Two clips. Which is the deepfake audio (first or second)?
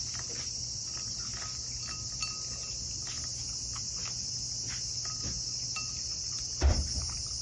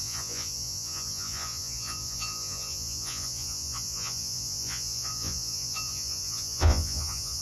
second